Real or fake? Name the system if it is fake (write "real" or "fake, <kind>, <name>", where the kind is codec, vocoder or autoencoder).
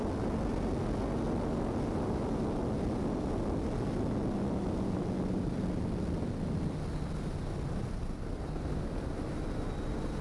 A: real